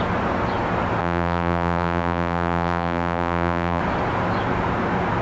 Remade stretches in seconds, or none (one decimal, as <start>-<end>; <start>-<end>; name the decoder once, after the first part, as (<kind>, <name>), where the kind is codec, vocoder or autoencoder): 1.0-3.8 (vocoder, BigVGAN v2)